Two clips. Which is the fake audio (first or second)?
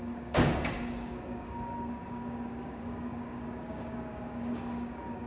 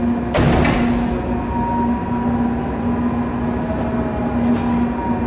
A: first